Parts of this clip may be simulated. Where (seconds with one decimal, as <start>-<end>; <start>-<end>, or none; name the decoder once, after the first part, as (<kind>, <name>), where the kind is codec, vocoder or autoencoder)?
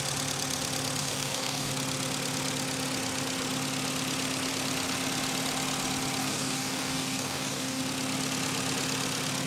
1.0-1.7 (codec, DAC); 6.2-7.8